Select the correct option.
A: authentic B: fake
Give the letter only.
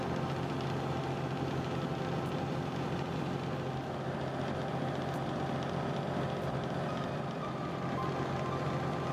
A